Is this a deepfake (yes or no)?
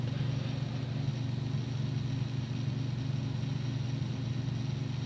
no